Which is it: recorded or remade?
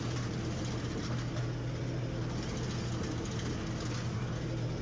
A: recorded